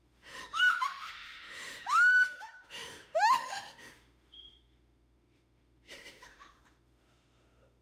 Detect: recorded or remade remade